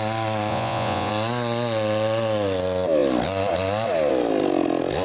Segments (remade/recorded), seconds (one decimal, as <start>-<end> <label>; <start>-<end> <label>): 0.0-0.5 recorded; 0.5-1.1 remade; 1.1-5.0 recorded